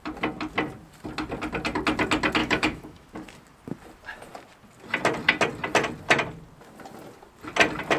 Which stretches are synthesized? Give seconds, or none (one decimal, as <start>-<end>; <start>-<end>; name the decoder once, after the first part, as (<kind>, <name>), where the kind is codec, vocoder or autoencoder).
2.4-3.1 (autoencoder, DAC-VAE)